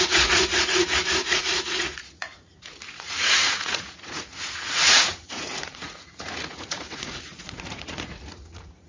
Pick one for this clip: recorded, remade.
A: remade